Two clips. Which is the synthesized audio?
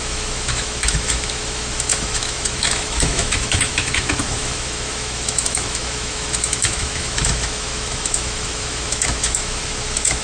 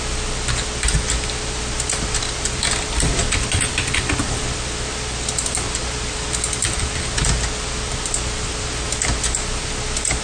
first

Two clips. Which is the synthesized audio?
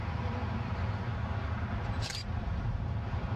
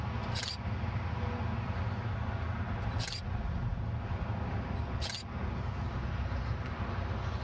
first